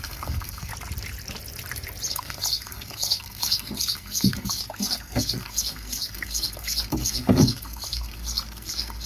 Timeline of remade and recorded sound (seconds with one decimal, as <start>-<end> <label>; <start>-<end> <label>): 0.0-0.7 remade; 0.7-2.1 recorded; 2.1-9.1 remade